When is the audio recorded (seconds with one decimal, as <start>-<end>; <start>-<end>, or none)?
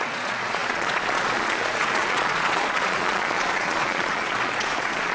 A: none